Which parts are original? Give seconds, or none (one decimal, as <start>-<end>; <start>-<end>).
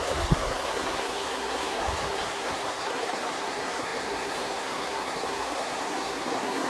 none